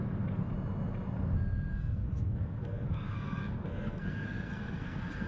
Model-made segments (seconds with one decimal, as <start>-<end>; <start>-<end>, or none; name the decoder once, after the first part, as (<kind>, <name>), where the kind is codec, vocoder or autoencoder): 1.7-5.3 (codec, SNAC)